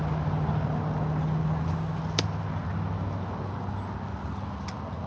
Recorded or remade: recorded